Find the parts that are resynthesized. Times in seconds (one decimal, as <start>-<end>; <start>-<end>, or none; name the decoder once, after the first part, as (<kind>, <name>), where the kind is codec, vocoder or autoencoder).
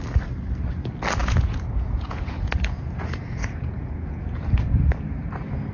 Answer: 1.2-4.6 (vocoder, Vocos)